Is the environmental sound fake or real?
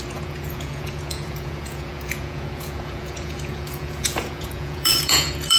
fake